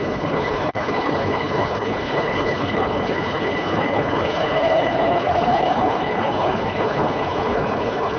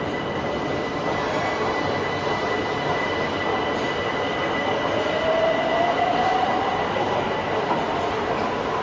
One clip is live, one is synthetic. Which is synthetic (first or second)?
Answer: first